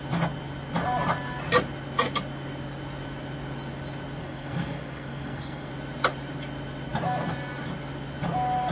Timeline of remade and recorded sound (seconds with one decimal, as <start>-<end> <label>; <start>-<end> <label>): 0.0-4.2 recorded; 4.2-5.7 remade; 5.7-8.7 recorded